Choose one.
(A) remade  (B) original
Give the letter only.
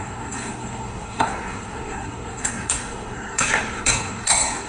A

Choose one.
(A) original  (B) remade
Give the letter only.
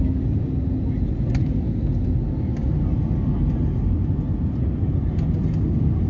A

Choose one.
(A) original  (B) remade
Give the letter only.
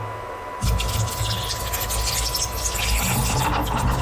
A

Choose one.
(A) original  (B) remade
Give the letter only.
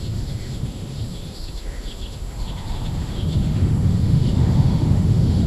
B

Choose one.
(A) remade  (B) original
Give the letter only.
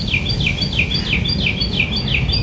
B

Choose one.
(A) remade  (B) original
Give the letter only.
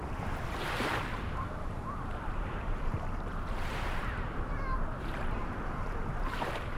A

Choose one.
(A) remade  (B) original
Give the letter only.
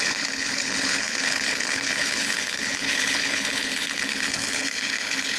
A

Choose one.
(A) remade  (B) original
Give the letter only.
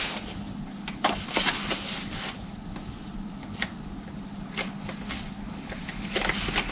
B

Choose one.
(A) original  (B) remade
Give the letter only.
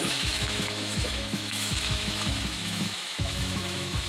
B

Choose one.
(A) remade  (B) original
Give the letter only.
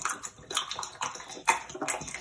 B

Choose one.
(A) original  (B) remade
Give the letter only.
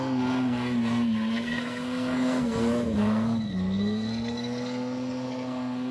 B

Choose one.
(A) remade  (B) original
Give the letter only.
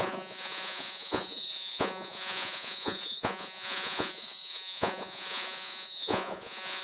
A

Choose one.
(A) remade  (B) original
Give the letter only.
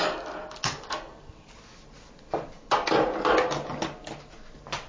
B